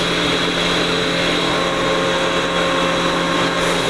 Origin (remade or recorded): recorded